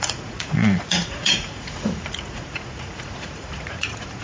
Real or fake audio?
fake